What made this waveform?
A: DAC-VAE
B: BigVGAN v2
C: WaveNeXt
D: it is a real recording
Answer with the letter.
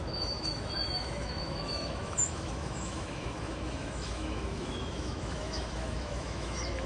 A